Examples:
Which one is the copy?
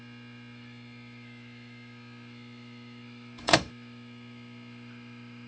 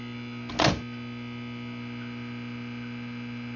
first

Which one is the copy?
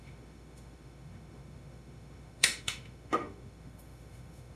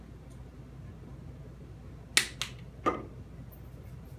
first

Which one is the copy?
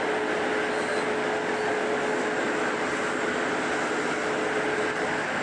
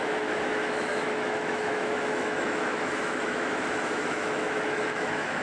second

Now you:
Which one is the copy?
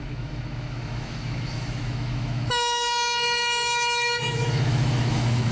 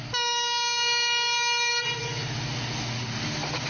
first